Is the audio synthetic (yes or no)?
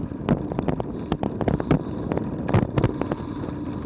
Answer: no